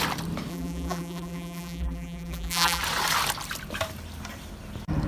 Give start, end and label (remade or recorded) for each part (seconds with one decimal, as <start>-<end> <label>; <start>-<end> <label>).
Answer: 0.0-0.5 recorded; 0.5-2.8 remade; 2.8-5.1 recorded

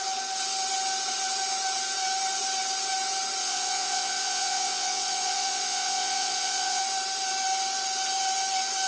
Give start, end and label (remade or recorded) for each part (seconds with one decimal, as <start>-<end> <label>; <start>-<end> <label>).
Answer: 0.0-3.4 recorded; 3.4-6.8 remade; 6.8-8.9 recorded

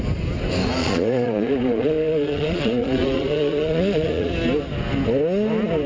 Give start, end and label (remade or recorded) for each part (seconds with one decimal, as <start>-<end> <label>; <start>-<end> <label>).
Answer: 0.0-0.8 recorded; 0.8-4.3 remade; 4.3-5.9 recorded